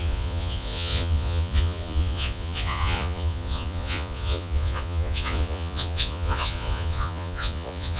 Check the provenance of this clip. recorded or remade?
remade